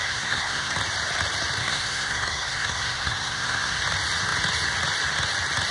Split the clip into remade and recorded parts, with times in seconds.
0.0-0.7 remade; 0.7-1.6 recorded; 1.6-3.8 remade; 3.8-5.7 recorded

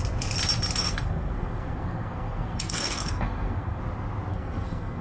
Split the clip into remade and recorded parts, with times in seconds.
0.0-0.8 recorded; 0.8-3.8 remade; 3.8-4.3 recorded; 4.3-5.0 remade

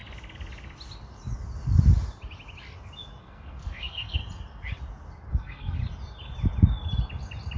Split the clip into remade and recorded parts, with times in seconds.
0.0-3.2 recorded; 3.2-4.2 remade; 4.2-5.3 recorded; 5.3-5.8 remade; 5.8-7.6 recorded

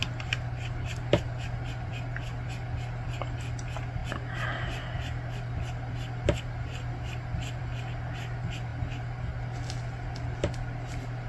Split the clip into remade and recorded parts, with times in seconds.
0.0-11.3 recorded